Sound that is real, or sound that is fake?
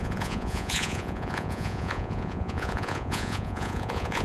fake